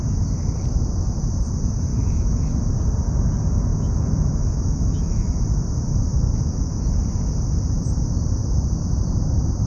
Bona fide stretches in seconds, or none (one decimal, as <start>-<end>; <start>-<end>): 0.0-1.9; 2.5-3.7; 5.4-6.1; 6.9-9.7